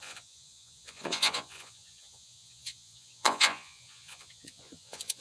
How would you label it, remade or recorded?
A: remade